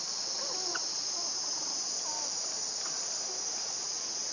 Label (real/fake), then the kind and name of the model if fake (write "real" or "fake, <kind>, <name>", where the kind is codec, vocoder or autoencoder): real